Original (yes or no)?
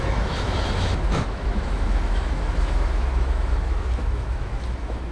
no